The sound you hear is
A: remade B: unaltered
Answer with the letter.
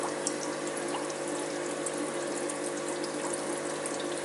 B